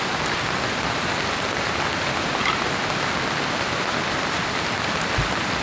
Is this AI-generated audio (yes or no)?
no